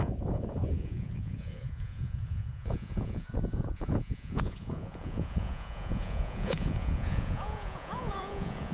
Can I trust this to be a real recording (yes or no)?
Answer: no